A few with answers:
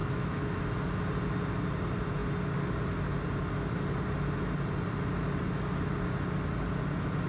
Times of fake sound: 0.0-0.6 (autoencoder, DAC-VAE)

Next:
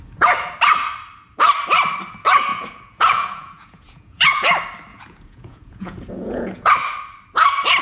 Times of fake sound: 2.5-4.4 (vocoder, Vocos); 4.9-6.7

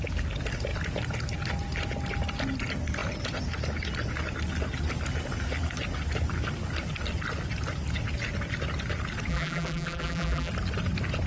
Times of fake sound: 9.3-10.5 (vocoder, BigVGAN v2)

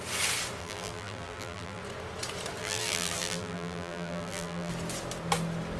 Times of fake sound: 0.6-1.8 (vocoder, BigVGAN v2); 2.6-4.7

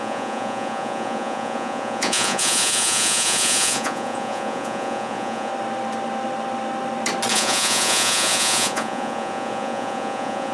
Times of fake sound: 0.0-5.5 (vocoder, Vocos); 7.3-10.5

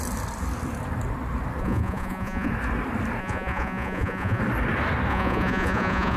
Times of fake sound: 1.6-2.5 (vocoder, Vocos); 3.2-4.4; 5.1-6.2